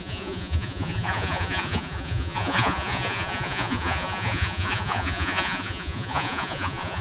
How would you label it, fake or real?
fake